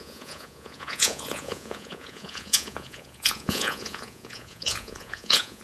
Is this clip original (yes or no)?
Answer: no